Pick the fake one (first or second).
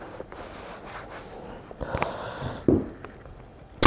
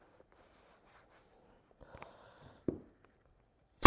second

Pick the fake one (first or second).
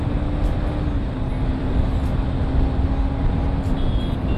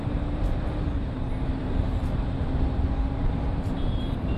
second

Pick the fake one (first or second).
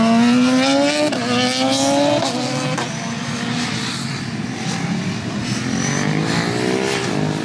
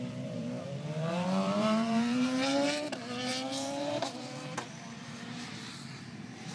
second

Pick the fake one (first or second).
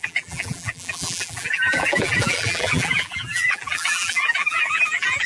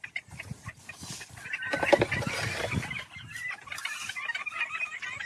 first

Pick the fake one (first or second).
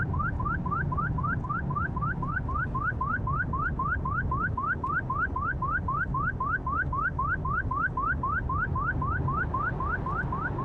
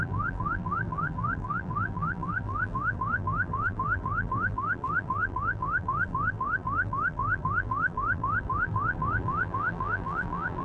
second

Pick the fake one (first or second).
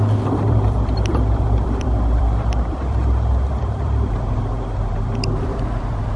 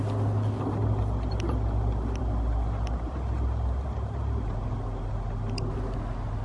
first